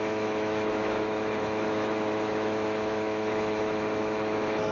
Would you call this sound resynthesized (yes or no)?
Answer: yes